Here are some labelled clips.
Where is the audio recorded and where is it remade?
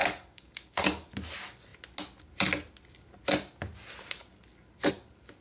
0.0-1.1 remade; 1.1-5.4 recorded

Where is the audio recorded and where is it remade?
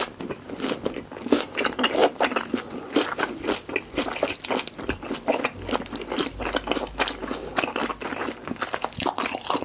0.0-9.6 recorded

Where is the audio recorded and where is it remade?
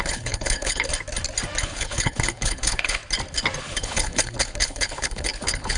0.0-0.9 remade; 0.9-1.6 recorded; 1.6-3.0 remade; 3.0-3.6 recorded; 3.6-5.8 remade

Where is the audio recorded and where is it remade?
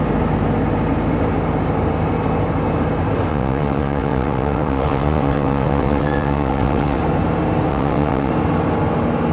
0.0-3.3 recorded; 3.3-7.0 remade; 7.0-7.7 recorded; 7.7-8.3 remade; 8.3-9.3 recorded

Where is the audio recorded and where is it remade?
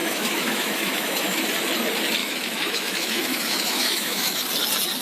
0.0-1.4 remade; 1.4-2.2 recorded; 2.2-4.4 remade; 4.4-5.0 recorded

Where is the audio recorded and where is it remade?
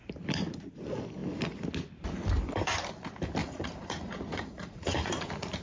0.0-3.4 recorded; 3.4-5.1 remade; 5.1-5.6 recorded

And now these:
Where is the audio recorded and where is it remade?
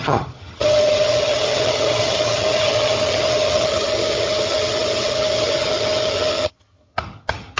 0.0-7.6 remade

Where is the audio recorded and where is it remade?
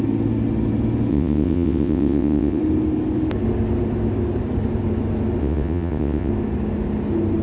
0.0-1.1 recorded; 1.1-2.6 remade; 2.6-5.4 recorded; 5.4-6.3 remade; 6.3-7.4 recorded